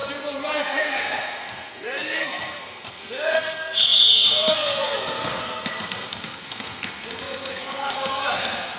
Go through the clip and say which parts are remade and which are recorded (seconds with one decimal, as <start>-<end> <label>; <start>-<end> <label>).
0.0-0.5 recorded; 0.5-8.8 remade